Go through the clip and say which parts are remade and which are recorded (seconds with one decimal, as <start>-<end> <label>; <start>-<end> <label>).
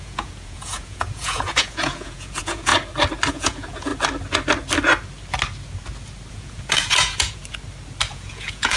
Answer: 0.0-2.7 remade; 2.7-3.3 recorded; 3.3-3.9 remade; 3.9-6.3 recorded; 6.3-7.4 remade; 7.4-8.1 recorded; 8.1-8.8 remade